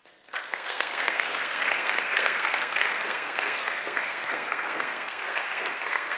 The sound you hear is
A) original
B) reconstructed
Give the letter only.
B